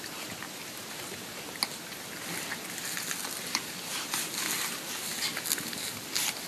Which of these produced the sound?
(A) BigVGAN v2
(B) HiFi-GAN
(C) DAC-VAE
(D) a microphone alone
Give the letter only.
D